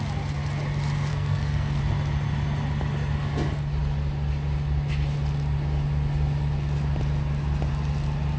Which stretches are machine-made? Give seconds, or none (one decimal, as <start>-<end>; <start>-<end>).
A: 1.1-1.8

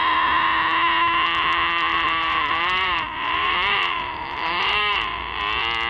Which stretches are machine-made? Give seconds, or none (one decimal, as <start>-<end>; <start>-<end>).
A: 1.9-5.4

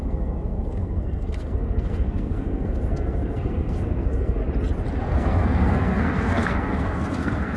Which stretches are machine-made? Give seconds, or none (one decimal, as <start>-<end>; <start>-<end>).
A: 0.0-4.4; 5.0-7.6

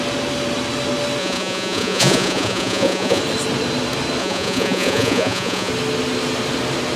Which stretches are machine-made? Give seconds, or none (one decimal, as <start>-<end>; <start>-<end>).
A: 1.2-3.2; 4.2-5.7

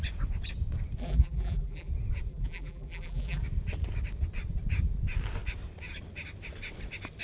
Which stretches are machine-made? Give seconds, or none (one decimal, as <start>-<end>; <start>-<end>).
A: 1.0-1.9; 2.3-3.4

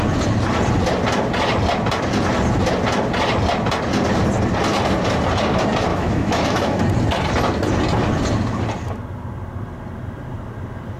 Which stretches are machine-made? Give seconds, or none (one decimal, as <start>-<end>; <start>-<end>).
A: 5.9-6.8

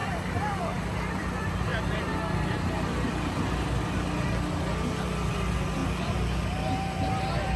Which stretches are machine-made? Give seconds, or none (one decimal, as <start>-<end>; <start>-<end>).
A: 0.0-1.7; 5.3-5.8; 7.0-7.6

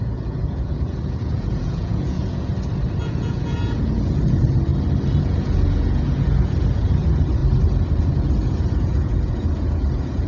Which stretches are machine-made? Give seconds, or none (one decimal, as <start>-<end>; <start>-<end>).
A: 0.0-2.5; 3.0-4.7; 5.2-7.4; 8.0-10.3